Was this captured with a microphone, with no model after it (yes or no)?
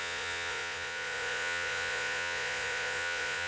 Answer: no